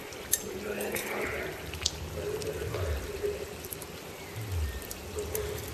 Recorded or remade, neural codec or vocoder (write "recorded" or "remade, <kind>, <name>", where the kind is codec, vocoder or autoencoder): recorded